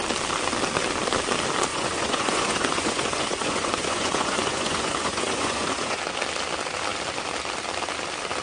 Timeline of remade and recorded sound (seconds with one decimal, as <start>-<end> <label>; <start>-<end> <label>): 0.0-1.7 recorded; 1.7-6.0 remade; 6.0-8.4 recorded